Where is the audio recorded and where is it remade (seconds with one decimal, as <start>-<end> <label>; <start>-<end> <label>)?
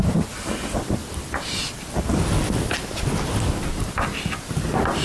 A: 0.0-1.0 remade; 1.0-3.7 recorded; 3.7-5.0 remade